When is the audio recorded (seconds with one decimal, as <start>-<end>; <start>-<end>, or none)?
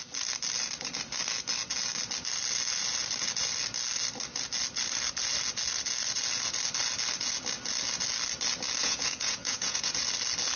0.0-8.8; 10.0-10.6